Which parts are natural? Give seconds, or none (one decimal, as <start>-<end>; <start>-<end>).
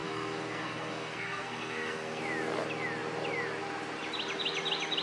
2.2-5.0